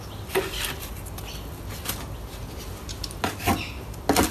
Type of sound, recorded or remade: recorded